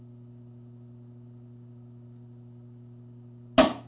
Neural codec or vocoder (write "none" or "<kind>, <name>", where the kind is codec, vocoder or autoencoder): none